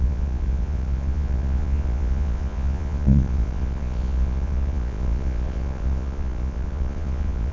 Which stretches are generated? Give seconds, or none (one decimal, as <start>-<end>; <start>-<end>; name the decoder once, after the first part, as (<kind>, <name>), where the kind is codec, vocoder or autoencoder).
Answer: 0.0-7.5 (vocoder, Vocos)